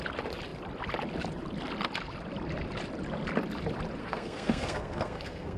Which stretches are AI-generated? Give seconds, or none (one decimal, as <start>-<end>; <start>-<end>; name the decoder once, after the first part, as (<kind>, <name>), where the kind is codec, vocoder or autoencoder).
4.0-5.6 (codec, SNAC)